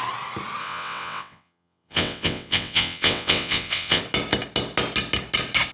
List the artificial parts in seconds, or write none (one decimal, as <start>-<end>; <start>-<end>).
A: 0.6-4.0